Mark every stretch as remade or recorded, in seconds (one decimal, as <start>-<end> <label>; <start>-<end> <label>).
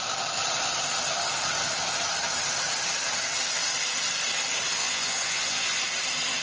0.0-4.8 recorded; 4.8-5.8 remade; 5.8-6.4 recorded